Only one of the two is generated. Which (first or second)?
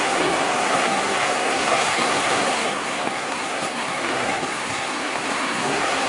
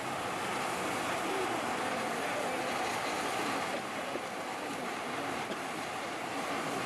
first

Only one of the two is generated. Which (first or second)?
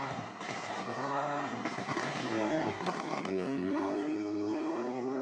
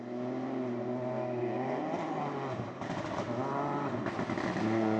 first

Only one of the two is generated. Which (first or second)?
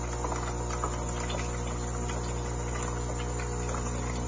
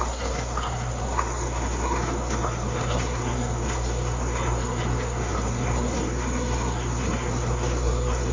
second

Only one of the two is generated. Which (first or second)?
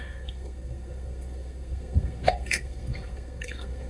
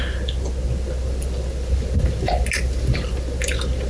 first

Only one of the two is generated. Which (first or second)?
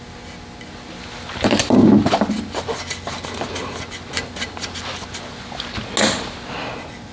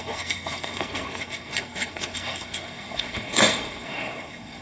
second